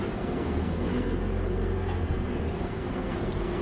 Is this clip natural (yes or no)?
no